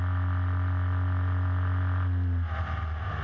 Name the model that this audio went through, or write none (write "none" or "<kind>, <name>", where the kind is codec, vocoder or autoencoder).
none